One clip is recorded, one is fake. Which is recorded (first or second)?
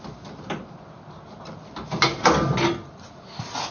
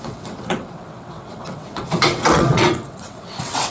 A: first